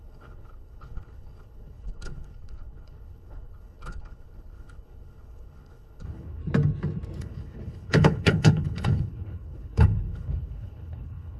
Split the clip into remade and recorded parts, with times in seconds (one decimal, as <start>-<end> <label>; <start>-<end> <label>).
0.0-6.4 remade; 6.4-7.2 recorded; 7.2-11.4 remade